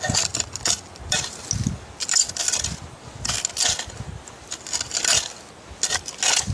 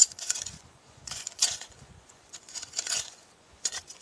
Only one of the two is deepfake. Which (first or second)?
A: second